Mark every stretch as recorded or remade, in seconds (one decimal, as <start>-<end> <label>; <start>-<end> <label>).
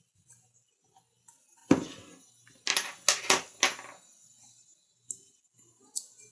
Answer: 0.0-6.3 recorded